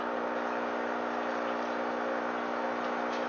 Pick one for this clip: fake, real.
real